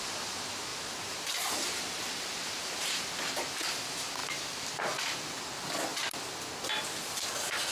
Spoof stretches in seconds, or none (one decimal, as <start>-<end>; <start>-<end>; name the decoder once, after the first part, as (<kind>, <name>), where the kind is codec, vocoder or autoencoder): 0.7-2.7 (vocoder, BigVGAN v2); 4.2-5.4